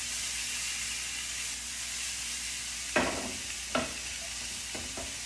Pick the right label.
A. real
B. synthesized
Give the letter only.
A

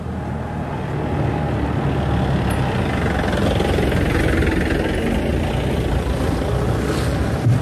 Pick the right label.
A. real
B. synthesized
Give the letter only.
A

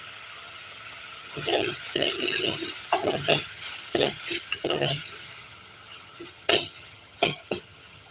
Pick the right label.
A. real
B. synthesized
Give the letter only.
B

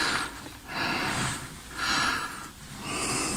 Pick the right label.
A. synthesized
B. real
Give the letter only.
B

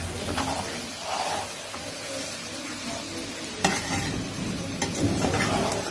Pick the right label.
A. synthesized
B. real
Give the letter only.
B